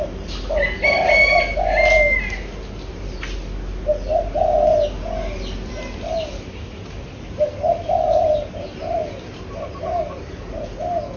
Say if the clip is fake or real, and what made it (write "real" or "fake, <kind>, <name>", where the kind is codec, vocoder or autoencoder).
real